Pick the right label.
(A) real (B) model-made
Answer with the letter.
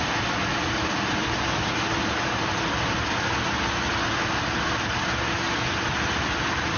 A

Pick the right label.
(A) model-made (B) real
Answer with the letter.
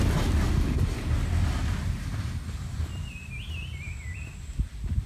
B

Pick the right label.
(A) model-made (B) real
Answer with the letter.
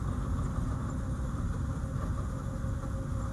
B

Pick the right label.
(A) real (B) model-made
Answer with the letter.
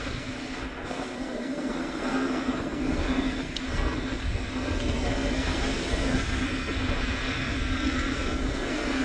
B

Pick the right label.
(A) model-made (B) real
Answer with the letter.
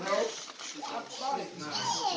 B